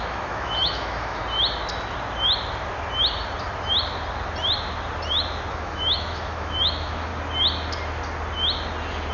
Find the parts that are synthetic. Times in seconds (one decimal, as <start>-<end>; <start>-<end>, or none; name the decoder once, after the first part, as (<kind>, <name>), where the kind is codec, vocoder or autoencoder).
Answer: 0.0-1.2 (autoencoder, DAC-VAE); 5.5-7.1